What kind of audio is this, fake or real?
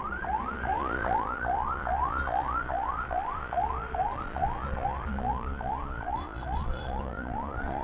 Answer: fake